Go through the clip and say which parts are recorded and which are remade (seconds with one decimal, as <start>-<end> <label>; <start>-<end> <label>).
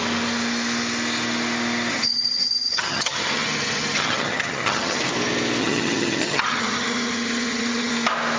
0.0-1.9 recorded; 1.9-5.0 remade; 5.0-5.6 recorded; 5.6-7.9 remade; 7.9-8.4 recorded